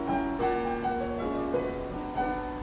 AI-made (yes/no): no